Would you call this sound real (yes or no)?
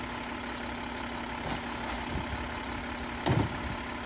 yes